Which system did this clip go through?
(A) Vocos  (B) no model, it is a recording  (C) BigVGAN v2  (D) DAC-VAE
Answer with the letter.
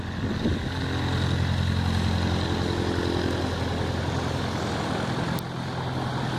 B